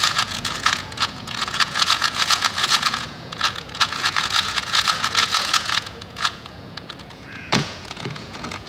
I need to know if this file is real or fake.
fake